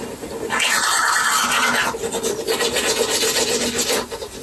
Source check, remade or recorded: recorded